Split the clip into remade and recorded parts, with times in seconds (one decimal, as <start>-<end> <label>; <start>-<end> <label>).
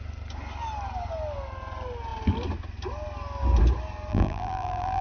0.0-4.1 recorded; 4.1-5.0 remade